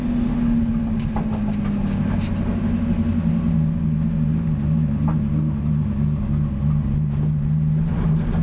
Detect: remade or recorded recorded